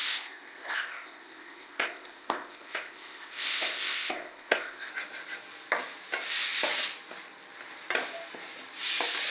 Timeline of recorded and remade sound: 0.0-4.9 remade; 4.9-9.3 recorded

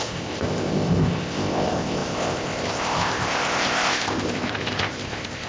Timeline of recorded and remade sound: 0.0-5.5 remade

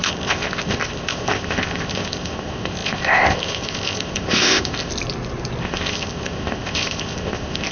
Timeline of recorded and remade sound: 0.0-4.9 remade; 4.9-5.6 recorded; 5.6-7.7 remade

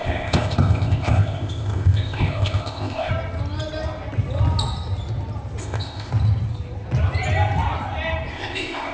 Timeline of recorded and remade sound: 0.0-3.1 remade; 3.1-5.6 recorded; 5.6-6.1 remade; 6.1-8.3 recorded; 8.3-8.9 remade

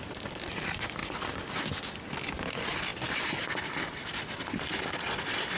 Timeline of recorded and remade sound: 0.0-5.6 recorded

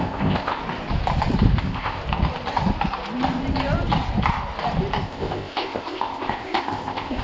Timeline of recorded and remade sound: 0.0-0.6 remade; 0.6-1.6 recorded; 1.6-2.0 remade; 2.0-5.0 recorded; 5.0-7.2 remade

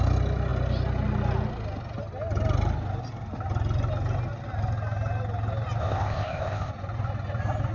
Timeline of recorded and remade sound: 0.0-5.8 recorded; 5.8-6.7 remade; 6.7-7.7 recorded

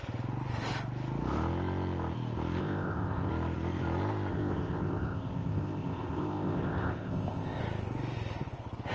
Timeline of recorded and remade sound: 0.0-2.6 recorded; 2.6-3.3 remade; 3.3-4.3 recorded; 4.3-7.6 remade; 7.6-8.9 recorded